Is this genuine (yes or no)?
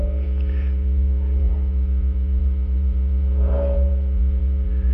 no